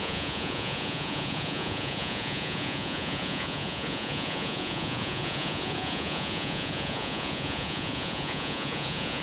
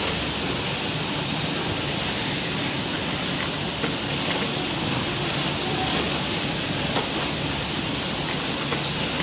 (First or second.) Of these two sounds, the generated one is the first